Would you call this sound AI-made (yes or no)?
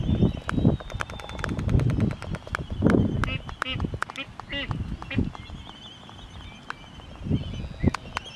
no